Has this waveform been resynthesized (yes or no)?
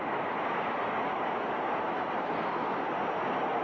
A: no